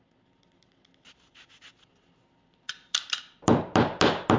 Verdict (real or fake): real